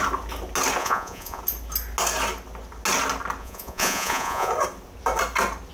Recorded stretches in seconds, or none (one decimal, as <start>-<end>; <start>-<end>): 0.0-0.8; 1.4-3.4; 4.5-5.7